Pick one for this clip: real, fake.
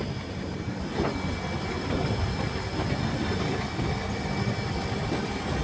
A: real